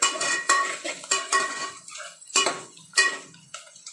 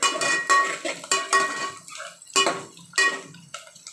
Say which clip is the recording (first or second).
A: second